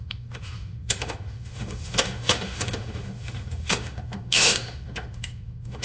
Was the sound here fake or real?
fake